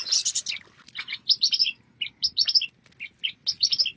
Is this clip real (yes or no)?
yes